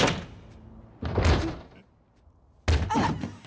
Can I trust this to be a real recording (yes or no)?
yes